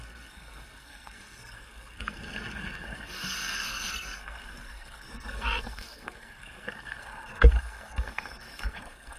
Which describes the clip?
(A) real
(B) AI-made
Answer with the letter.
B